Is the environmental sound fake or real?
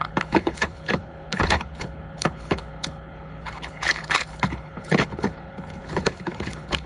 fake